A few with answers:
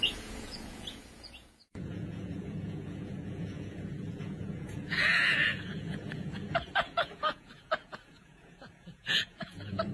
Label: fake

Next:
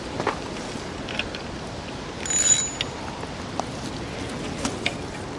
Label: real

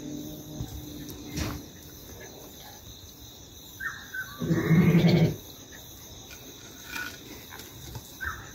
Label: real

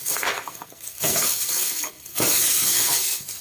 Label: fake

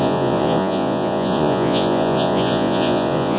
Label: fake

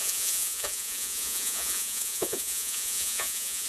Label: fake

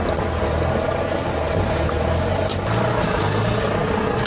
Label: real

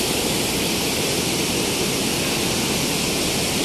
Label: real